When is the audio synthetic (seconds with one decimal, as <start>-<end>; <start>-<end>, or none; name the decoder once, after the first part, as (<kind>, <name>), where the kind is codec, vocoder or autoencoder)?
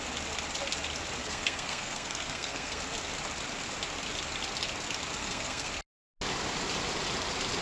1.2-2.8 (codec, SNAC); 5.2-5.7